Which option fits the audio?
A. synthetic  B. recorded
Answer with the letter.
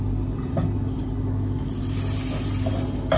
B